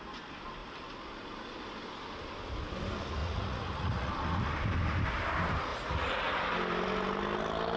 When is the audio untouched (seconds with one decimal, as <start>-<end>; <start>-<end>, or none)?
0.0-3.2; 4.1-5.7; 6.4-7.8